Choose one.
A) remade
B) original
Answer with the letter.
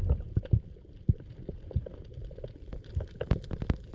B